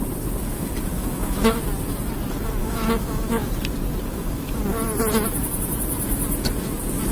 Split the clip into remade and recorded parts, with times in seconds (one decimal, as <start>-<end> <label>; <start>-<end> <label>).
0.0-0.9 recorded; 0.9-1.6 remade; 1.6-2.6 recorded; 2.6-3.5 remade; 3.5-4.1 recorded; 4.1-4.6 remade; 4.6-7.1 recorded